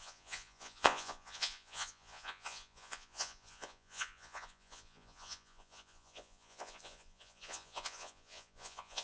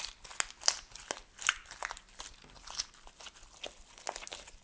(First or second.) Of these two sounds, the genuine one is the second